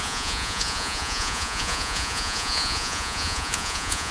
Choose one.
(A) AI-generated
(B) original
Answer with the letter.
A